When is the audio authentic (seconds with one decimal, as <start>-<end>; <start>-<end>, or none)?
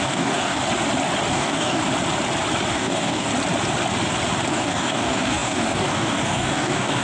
0.6-1.3; 1.8-2.7; 3.3-4.5